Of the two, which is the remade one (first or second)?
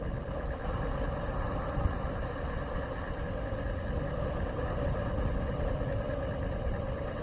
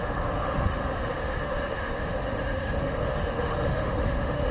second